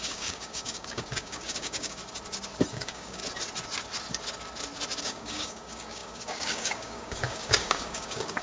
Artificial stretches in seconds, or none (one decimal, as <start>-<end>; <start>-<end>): 0.0-2.0; 2.7-3.2; 5.0-8.4